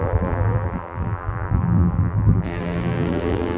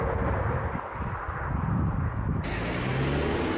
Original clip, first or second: second